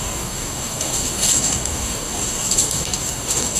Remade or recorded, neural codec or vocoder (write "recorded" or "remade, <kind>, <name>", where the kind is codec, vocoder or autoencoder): remade, codec, DAC